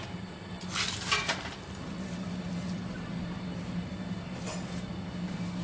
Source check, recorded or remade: recorded